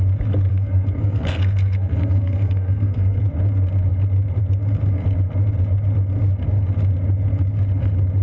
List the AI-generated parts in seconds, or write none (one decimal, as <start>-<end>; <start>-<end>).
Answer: 0.5-3.2